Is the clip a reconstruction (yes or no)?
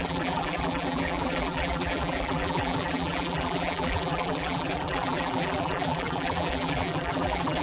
yes